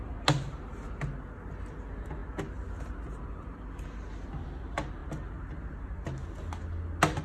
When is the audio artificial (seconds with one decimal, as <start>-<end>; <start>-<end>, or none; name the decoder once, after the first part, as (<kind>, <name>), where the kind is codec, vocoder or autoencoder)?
none